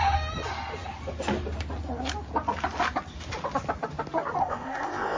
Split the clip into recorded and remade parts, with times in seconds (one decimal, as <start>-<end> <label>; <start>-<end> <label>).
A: 0.0-4.4 recorded; 4.4-5.2 remade